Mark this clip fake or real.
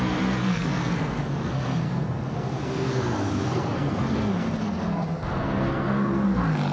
fake